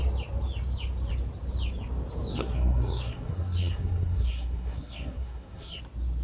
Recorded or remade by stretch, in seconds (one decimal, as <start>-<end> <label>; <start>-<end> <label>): 0.0-2.3 recorded; 2.3-5.8 remade; 5.8-6.2 recorded